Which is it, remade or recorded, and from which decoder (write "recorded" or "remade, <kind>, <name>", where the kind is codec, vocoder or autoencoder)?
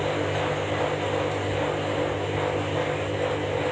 recorded